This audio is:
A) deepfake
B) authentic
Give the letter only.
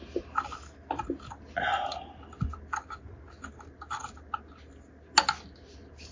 B